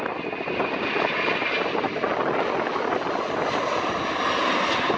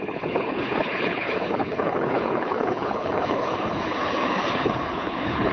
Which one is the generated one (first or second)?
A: second